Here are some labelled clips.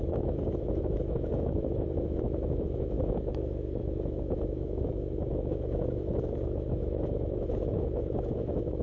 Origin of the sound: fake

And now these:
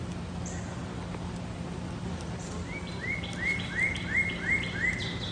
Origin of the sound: real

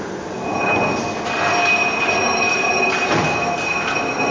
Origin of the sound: real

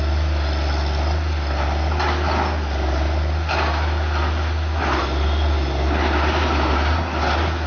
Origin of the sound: real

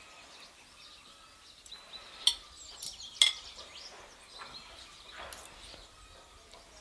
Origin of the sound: real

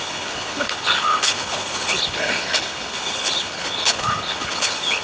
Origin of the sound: fake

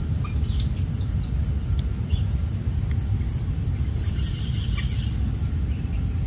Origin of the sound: real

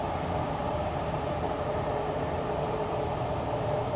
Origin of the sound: fake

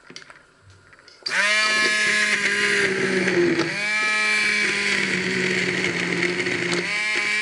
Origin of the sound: real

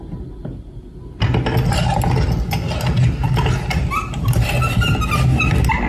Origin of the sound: real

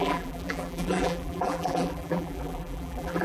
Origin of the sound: fake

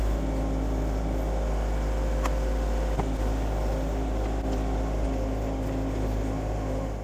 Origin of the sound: real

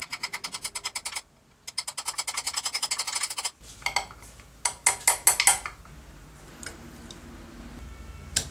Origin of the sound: real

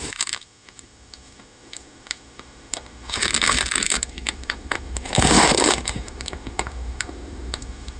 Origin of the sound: fake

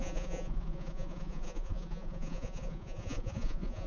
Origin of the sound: fake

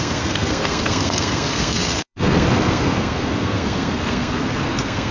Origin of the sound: fake